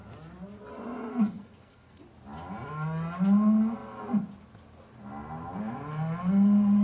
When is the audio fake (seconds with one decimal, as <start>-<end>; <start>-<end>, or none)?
1.1-2.0